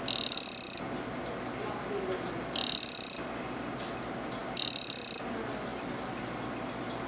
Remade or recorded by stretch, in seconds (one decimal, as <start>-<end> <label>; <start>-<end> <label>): 0.0-7.1 recorded